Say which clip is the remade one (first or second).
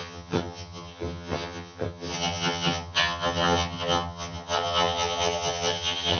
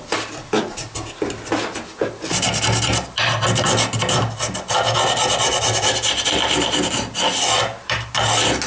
first